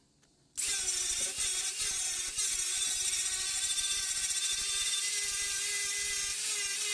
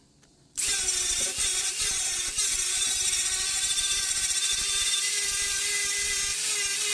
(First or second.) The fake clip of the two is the second